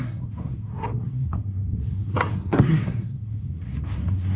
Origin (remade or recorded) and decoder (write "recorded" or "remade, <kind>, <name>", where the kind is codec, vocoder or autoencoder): remade, codec, SNAC